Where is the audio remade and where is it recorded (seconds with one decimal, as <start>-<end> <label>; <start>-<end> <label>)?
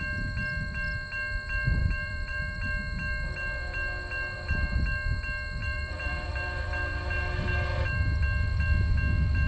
0.0-1.8 recorded; 1.8-2.6 remade; 2.6-5.6 recorded; 5.6-6.3 remade; 6.3-9.5 recorded